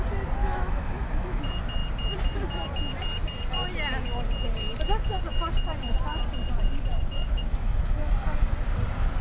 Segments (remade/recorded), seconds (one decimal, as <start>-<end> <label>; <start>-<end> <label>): 0.0-0.4 recorded; 0.4-1.4 remade; 1.4-6.9 recorded; 6.9-8.1 remade; 8.1-9.2 recorded